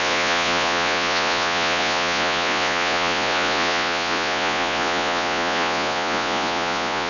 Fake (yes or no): yes